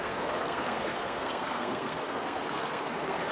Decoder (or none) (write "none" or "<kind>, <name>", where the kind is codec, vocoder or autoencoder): codec, SNAC